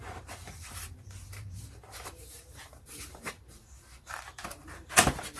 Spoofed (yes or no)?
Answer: yes